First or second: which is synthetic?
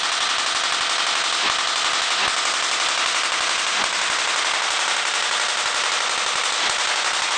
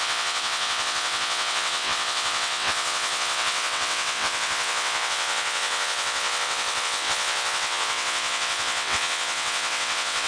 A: second